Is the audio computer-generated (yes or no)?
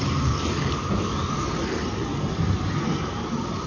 no